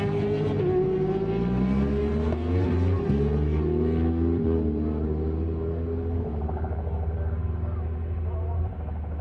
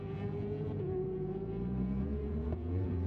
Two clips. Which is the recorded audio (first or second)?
first